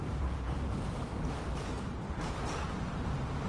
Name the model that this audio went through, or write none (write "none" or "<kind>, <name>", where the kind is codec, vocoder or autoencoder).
vocoder, BigVGAN v2